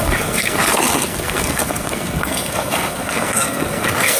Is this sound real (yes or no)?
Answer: no